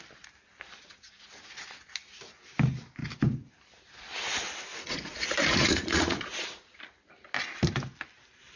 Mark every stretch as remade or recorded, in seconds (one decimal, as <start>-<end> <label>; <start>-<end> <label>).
0.0-4.7 recorded; 4.7-6.8 remade; 6.8-8.6 recorded